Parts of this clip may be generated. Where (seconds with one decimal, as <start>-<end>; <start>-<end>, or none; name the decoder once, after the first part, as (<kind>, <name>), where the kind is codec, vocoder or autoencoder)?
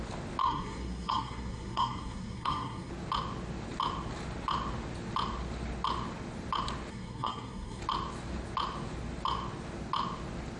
0.4-2.9 (codec, SNAC); 6.9-7.8